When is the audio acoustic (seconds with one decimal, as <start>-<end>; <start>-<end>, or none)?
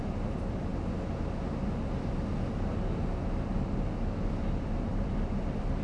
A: 0.7-4.2